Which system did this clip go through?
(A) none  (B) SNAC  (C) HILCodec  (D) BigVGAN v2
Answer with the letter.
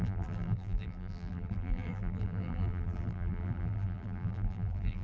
D